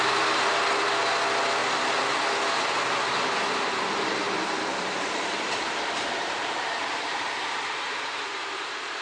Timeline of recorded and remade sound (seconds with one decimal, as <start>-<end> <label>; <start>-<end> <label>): 0.0-4.7 recorded; 4.7-9.0 remade

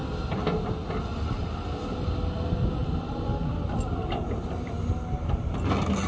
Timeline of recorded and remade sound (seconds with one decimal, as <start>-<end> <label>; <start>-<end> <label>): 0.0-2.8 recorded; 2.8-5.1 remade; 5.1-6.1 recorded

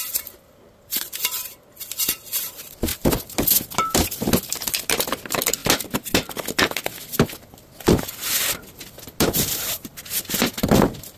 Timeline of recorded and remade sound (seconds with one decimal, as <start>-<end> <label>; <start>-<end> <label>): 0.0-11.2 recorded

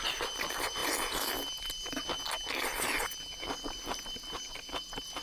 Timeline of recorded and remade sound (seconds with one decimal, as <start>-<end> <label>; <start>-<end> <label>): 0.0-5.2 recorded

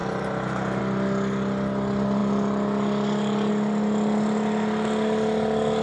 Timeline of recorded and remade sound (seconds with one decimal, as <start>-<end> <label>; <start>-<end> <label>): 0.0-0.8 remade; 0.8-5.8 recorded

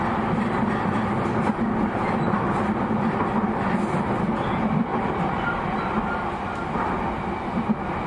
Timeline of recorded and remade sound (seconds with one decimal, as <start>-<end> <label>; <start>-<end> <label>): 0.0-4.9 recorded; 4.9-5.6 remade; 5.6-8.1 recorded

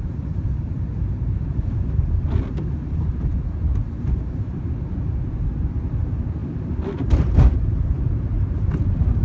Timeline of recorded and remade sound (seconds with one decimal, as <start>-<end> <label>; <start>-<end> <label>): 0.0-6.4 recorded; 6.4-8.1 remade; 8.1-9.2 recorded

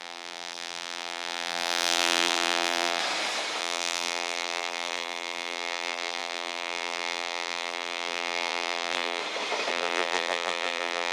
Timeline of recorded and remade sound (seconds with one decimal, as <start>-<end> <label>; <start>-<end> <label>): 0.0-3.0 remade; 3.0-3.6 recorded; 3.6-9.2 remade; 9.2-9.7 recorded; 9.7-11.1 remade